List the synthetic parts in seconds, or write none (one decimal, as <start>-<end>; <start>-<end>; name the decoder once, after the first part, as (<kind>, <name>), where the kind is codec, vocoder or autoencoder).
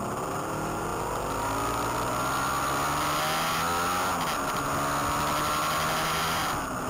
none